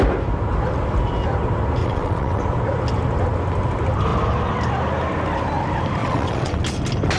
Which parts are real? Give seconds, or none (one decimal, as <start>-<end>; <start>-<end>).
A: 0.0-1.8; 2.4-6.0; 6.6-7.2